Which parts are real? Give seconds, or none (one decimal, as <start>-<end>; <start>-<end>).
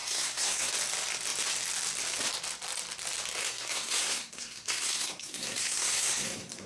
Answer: 0.7-3.4